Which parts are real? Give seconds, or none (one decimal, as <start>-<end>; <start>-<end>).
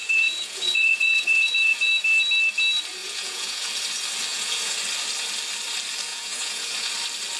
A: 1.9-3.0; 3.7-4.3; 4.8-6.1; 6.9-7.4